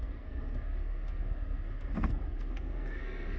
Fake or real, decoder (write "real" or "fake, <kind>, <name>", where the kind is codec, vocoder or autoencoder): fake, codec, SNAC